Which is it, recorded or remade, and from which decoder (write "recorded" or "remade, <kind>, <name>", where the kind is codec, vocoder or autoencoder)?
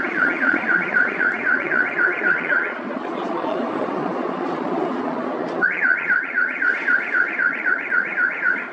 remade, vocoder, Vocos